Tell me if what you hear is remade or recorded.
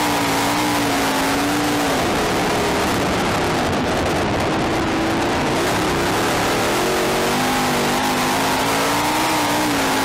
recorded